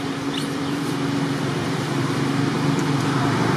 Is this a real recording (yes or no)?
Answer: no